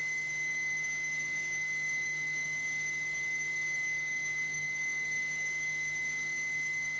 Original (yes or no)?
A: no